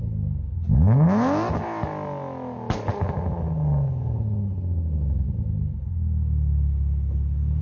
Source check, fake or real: real